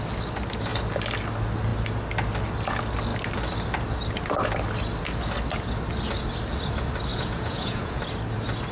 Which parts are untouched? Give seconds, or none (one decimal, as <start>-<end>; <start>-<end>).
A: 0.0-7.1; 8.0-8.7